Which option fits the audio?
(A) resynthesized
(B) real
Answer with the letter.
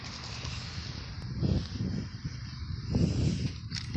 B